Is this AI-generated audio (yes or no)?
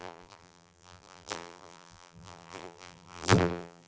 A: yes